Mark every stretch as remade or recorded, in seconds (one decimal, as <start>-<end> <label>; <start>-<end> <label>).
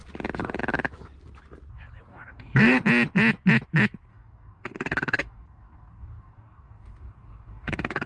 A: 0.0-2.1 recorded; 2.1-2.8 remade; 2.8-4.1 recorded; 4.1-8.1 remade